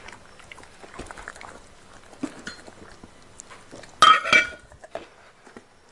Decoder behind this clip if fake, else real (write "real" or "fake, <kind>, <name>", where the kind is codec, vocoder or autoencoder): real